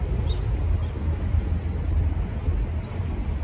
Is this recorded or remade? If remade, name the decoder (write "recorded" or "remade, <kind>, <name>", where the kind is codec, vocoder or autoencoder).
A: recorded